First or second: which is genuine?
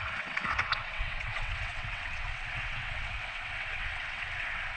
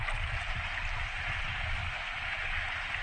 second